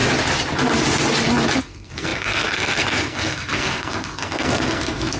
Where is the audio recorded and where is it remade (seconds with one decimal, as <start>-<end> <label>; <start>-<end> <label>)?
0.0-1.6 recorded; 1.6-5.2 remade